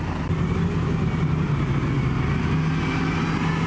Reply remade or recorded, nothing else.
recorded